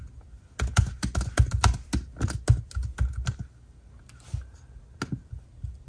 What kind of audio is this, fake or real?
real